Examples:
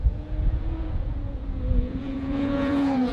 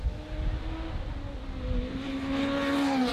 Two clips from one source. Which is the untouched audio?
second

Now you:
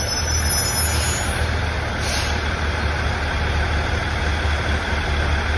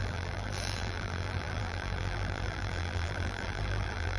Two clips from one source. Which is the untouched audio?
first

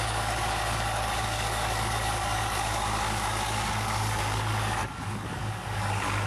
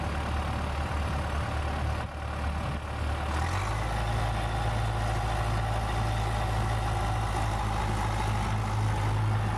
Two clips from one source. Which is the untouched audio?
second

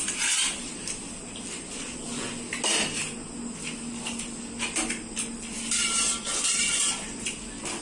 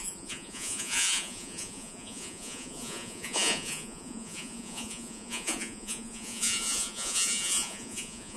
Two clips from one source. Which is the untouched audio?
first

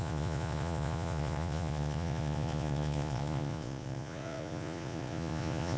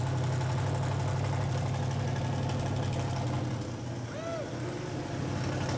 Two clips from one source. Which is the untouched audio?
second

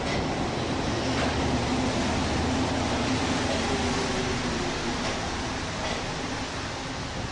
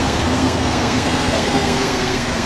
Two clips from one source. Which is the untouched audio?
first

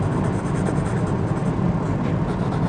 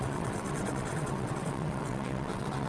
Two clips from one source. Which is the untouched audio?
first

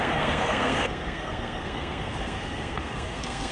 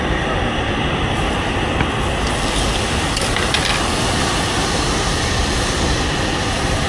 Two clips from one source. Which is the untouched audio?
second